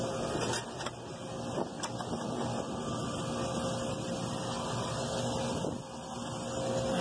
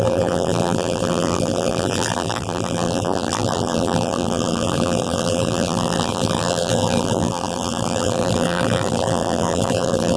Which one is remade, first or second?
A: second